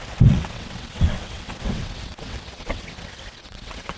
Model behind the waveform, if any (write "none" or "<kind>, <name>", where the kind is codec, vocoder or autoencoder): vocoder, WaveNeXt